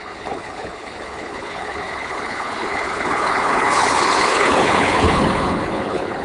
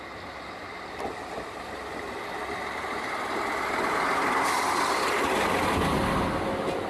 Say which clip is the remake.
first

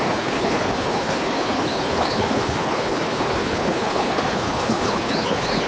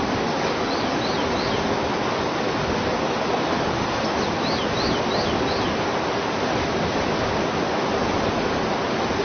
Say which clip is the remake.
first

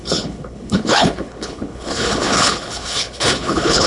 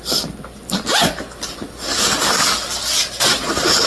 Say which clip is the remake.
first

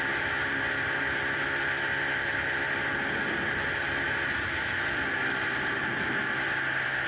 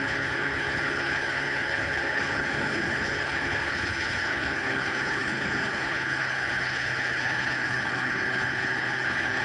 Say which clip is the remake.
second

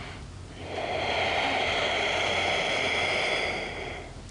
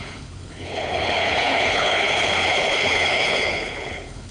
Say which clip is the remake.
second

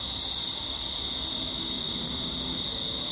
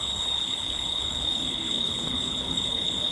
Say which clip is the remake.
second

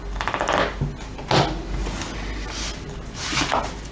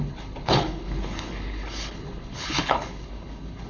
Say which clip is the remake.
second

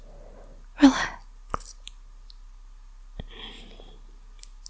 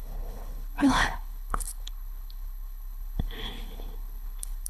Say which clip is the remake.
second